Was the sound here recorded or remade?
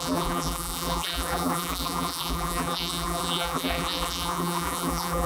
remade